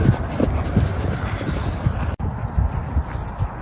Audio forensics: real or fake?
real